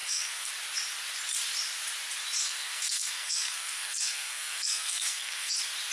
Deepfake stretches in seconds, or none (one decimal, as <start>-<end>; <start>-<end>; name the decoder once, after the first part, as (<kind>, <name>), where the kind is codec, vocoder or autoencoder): 0.0-0.5 (codec, SNAC); 2.4-5.5